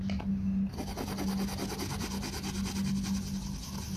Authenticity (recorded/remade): recorded